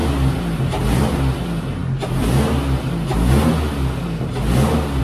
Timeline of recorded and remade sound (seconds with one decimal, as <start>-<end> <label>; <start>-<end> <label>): 0.0-5.0 recorded